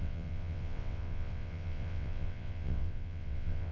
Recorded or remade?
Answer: remade